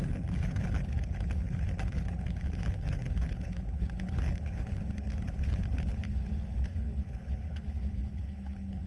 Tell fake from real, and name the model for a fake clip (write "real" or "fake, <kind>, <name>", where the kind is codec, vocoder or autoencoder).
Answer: fake, codec, HILCodec